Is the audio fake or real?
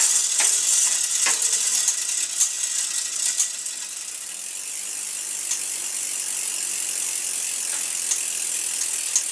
real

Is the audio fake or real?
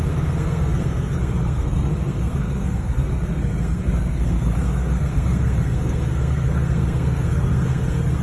fake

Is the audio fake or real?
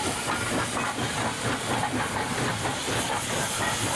real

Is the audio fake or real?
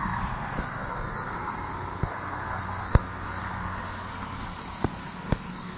fake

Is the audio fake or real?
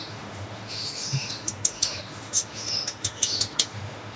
fake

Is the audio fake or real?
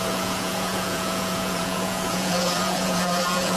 fake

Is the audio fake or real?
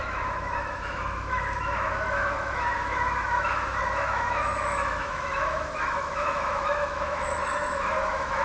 fake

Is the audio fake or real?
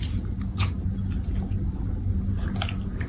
real